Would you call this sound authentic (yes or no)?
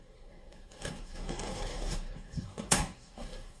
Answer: no